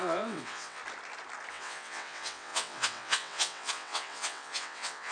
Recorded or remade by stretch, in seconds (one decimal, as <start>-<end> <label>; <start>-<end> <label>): 0.0-0.8 remade; 0.8-1.5 recorded; 1.5-5.1 remade